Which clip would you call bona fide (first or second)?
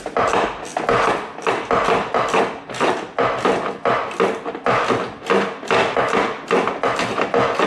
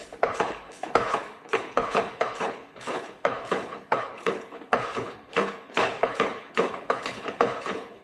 first